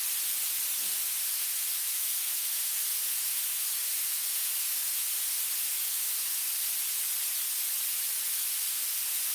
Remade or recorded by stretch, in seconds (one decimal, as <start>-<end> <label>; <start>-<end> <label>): 0.0-0.8 recorded; 0.8-6.5 remade; 6.5-8.3 recorded; 8.3-9.3 remade

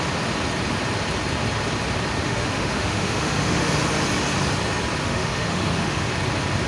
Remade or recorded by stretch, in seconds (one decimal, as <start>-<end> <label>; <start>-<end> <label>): 0.0-2.2 recorded; 2.2-3.7 remade; 3.7-5.0 recorded; 5.0-6.1 remade; 6.1-6.7 recorded

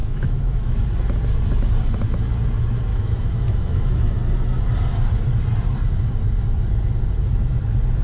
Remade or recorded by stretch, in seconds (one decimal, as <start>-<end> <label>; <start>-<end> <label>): 0.0-0.7 remade; 0.7-2.9 recorded; 2.9-4.2 remade; 4.2-8.0 recorded

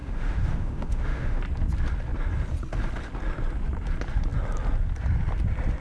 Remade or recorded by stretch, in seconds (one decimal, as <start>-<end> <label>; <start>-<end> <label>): 0.0-1.4 remade; 1.4-5.8 recorded

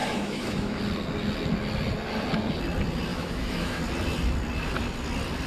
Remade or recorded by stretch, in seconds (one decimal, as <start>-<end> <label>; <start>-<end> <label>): 0.0-0.8 remade; 0.8-3.1 recorded; 3.1-3.8 remade; 3.8-5.5 recorded